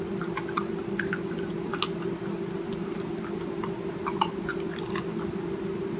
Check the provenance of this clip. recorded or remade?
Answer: recorded